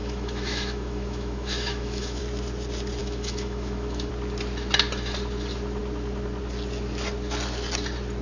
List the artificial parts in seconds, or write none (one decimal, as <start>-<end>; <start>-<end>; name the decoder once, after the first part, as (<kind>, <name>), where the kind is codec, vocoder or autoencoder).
0.0-2.2 (autoencoder, DAC-VAE); 3.0-4.1